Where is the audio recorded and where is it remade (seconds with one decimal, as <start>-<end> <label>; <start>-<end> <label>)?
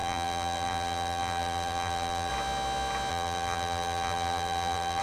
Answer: 0.0-2.3 remade; 2.3-3.1 recorded; 3.1-5.0 remade